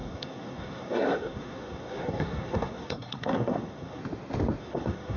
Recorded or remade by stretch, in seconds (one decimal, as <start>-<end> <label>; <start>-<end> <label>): 0.0-4.0 remade; 4.0-4.6 recorded; 4.6-5.2 remade